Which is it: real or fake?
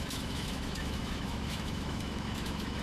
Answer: fake